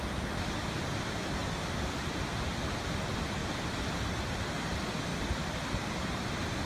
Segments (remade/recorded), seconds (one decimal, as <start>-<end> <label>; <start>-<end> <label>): 0.0-6.7 recorded